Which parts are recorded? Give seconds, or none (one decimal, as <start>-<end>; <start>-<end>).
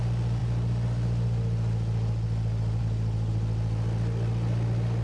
0.0-5.0